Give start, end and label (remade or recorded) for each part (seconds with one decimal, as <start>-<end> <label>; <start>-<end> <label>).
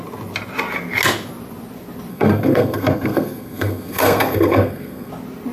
0.0-2.1 recorded; 2.1-5.1 remade; 5.1-5.5 recorded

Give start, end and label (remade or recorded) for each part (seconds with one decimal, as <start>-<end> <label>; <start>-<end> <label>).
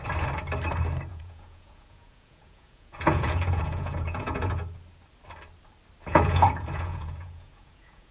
0.0-1.1 recorded; 1.1-4.5 remade; 4.5-6.1 recorded; 6.1-8.1 remade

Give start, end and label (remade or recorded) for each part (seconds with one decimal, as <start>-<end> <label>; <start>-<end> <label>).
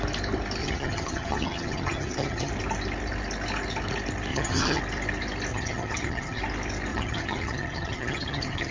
0.0-0.6 recorded; 0.6-2.5 remade; 2.5-4.3 recorded; 4.3-4.8 remade; 4.8-5.5 recorded; 5.5-6.4 remade; 6.4-6.9 recorded; 6.9-8.7 remade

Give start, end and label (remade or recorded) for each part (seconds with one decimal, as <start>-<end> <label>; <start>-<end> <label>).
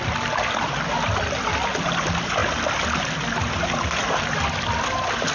0.0-5.3 recorded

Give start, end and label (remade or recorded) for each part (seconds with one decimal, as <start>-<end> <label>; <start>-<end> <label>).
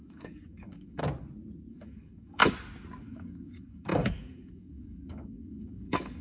0.0-1.0 remade; 1.0-1.7 recorded; 1.7-2.4 remade; 2.4-3.0 recorded; 3.0-6.2 remade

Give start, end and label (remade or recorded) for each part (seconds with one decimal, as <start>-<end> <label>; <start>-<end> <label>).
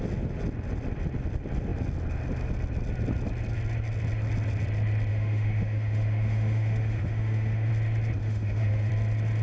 0.0-5.1 recorded; 5.1-7.7 remade; 7.7-8.2 recorded; 8.2-8.9 remade; 8.9-9.4 recorded